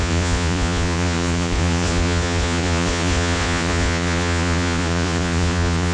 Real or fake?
fake